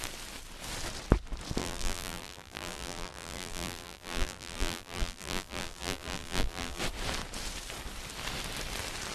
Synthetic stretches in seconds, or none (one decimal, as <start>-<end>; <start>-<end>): 1.6-6.8